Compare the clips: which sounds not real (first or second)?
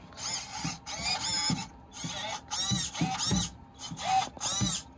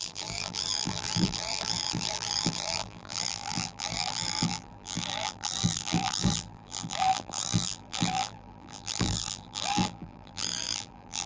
second